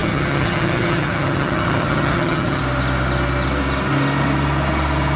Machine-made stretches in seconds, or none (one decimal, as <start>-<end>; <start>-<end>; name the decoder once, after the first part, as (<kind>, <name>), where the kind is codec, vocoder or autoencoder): 0.0-2.6 (vocoder, HiFi-GAN)